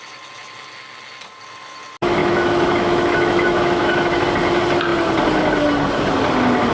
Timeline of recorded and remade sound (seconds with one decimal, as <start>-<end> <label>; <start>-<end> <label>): 0.0-2.2 recorded; 2.2-4.1 remade; 4.1-6.7 recorded